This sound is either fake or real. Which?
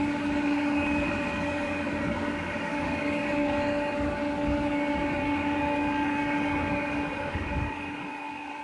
fake